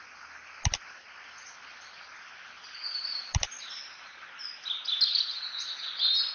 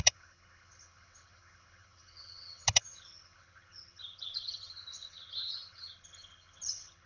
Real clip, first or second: first